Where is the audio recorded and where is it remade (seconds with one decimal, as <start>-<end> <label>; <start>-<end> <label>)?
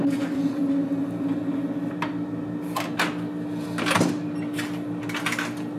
0.0-5.8 recorded